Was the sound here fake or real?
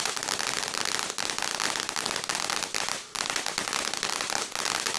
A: real